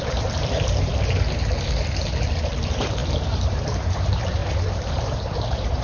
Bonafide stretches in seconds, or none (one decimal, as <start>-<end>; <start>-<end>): 0.9-2.5